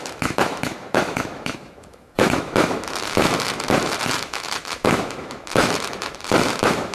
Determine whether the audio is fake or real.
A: fake